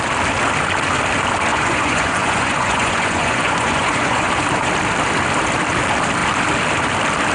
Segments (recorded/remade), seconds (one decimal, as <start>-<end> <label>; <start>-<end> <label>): 0.0-1.5 recorded; 1.5-4.3 remade; 4.3-7.3 recorded